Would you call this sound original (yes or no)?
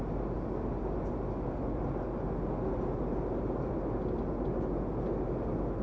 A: yes